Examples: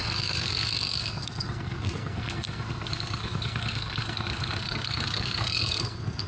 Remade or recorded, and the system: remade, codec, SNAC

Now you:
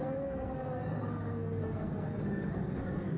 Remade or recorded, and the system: remade, codec, SNAC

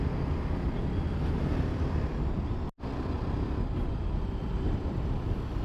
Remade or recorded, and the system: recorded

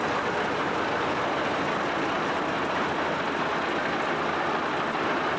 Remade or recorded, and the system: recorded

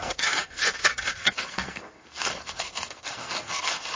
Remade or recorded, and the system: remade, codec, SNAC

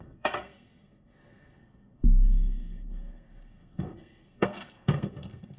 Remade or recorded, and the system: remade, codec, SNAC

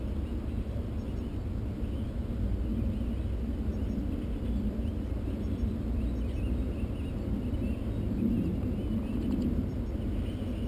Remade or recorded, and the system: recorded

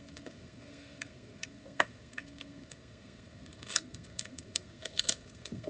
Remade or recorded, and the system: remade, codec, SNAC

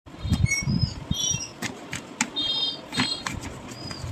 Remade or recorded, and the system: recorded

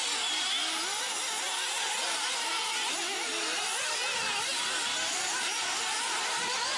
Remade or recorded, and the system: recorded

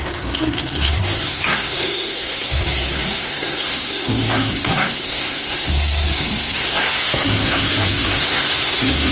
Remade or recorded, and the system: remade, codec, SNAC